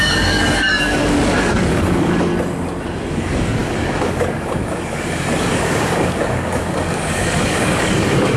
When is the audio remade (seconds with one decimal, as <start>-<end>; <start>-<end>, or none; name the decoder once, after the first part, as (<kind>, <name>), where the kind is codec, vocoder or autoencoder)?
0.0-2.3 (codec, DAC); 3.1-8.4